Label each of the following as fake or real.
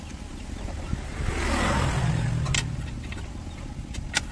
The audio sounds real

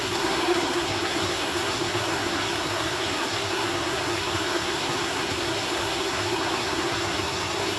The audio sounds fake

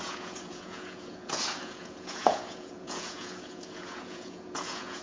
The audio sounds fake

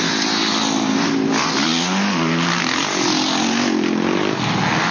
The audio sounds real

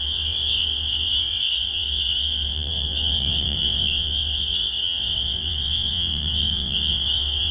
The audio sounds fake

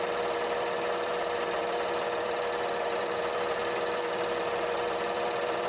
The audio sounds fake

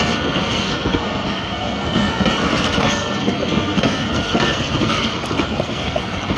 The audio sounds fake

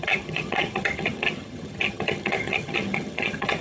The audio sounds fake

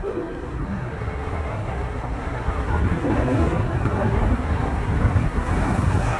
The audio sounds fake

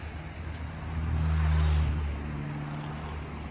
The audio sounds real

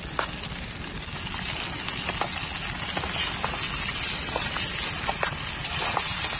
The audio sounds real